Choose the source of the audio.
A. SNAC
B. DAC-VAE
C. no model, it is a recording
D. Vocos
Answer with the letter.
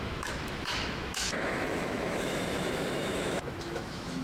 B